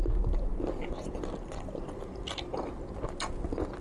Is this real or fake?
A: real